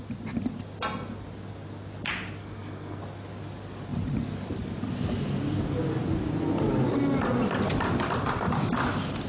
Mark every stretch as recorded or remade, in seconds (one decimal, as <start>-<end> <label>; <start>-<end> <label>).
0.0-2.4 recorded; 2.4-3.0 remade; 3.0-9.3 recorded